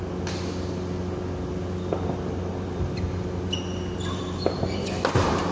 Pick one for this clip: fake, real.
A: real